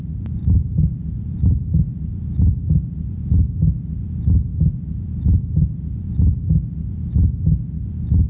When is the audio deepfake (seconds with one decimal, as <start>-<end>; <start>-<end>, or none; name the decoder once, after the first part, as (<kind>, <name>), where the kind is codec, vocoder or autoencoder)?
0.4-3.3 (vocoder, BigVGAN v2); 4.5-6.1